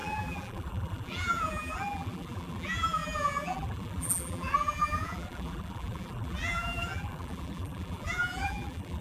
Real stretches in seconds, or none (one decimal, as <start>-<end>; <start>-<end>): none